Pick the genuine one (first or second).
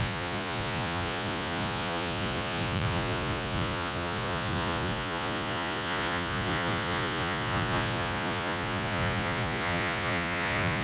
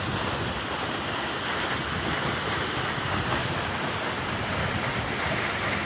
second